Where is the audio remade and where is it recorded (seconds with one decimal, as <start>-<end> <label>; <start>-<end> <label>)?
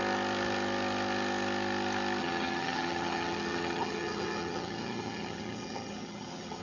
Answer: 0.0-2.2 recorded; 2.2-6.6 remade